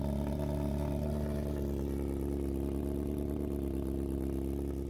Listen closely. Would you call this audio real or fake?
real